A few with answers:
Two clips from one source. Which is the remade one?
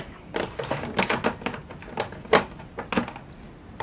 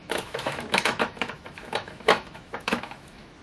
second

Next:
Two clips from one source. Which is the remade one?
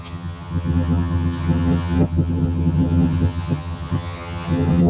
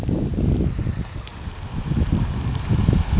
first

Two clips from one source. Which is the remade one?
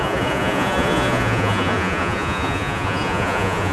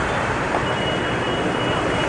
first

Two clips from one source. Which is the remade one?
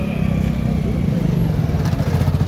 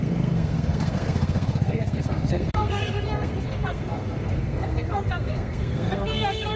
second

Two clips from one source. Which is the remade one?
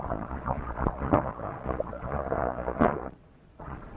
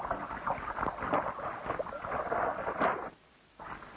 first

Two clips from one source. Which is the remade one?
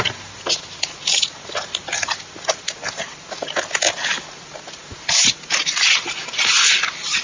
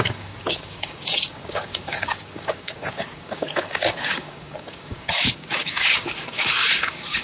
second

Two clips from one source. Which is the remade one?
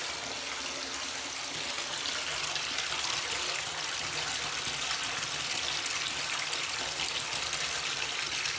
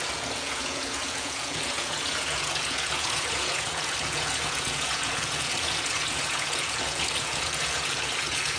second